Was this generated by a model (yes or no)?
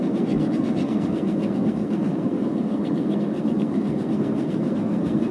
yes